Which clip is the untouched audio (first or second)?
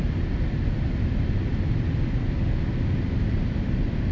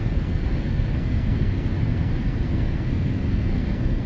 first